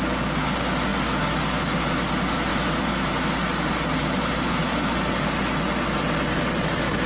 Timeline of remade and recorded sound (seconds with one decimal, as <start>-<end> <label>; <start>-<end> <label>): 0.0-7.1 recorded

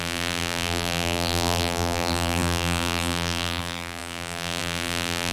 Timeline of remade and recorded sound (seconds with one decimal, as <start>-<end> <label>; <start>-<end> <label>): 0.0-5.3 remade

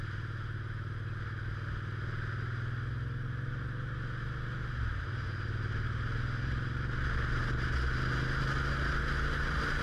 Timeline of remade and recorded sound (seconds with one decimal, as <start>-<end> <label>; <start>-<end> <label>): 0.0-9.8 recorded